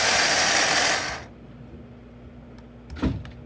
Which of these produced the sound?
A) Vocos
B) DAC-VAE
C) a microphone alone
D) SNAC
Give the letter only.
C